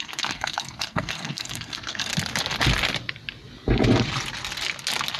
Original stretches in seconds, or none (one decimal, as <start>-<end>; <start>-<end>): 2.1-5.2